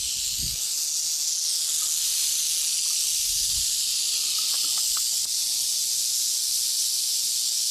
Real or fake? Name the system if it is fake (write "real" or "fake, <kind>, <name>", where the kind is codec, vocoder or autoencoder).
real